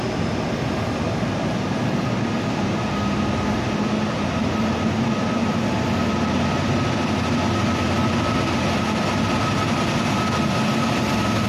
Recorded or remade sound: recorded